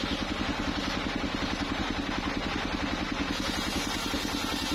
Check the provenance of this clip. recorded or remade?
recorded